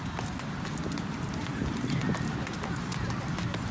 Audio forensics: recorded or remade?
remade